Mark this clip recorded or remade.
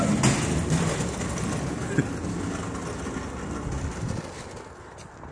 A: recorded